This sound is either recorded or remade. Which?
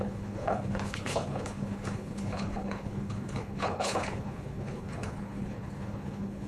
remade